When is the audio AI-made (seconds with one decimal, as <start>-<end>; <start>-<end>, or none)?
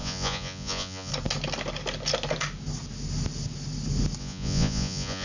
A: 0.0-1.1; 4.2-5.2